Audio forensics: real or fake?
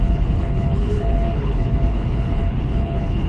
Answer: fake